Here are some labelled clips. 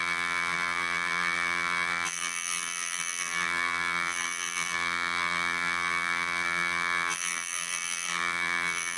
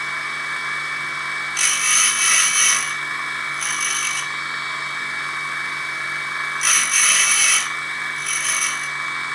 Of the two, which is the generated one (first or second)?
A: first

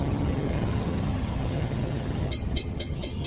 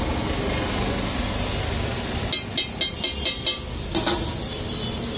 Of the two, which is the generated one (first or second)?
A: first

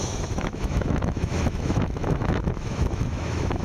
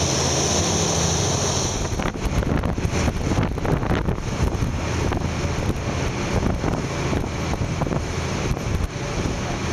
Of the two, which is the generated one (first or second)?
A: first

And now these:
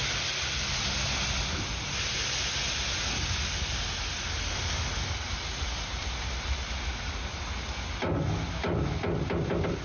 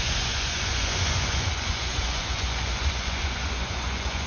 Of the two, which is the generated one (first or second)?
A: second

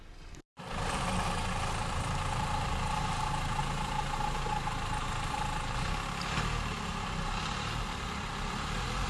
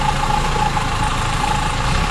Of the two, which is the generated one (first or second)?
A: first